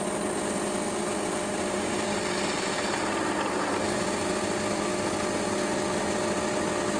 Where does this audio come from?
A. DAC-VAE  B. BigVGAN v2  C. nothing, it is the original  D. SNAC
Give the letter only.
C